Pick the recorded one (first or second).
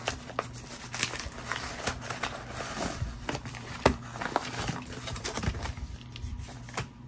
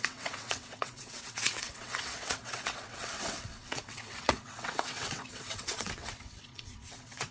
first